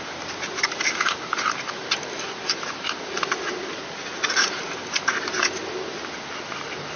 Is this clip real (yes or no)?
yes